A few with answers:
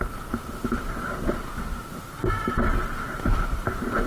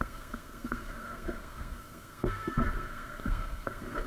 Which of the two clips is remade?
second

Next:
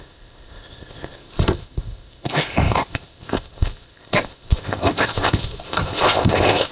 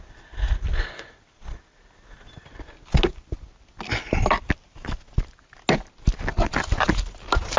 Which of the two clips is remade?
first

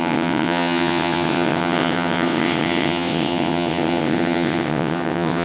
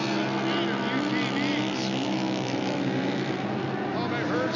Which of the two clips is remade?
first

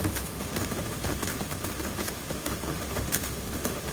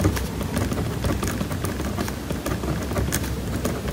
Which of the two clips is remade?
first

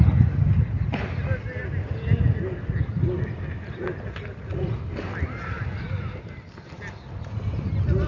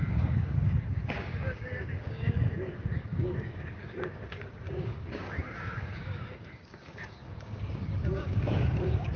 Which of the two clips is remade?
second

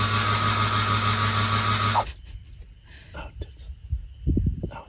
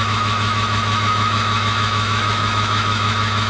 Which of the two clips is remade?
second